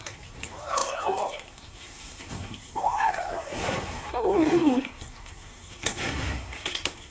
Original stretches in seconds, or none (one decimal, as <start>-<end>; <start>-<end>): none